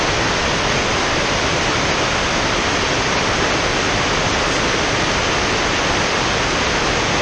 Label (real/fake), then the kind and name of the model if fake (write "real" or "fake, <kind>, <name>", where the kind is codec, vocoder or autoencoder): real